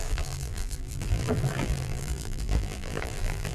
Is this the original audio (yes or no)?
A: no